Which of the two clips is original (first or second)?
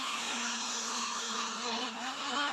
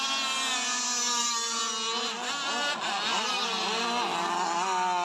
second